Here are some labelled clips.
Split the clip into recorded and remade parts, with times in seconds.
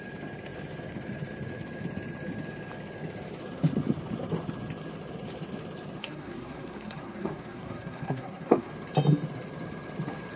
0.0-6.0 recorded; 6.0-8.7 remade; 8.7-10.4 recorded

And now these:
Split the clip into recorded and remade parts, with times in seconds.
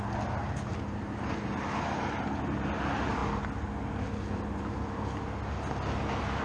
0.0-6.4 recorded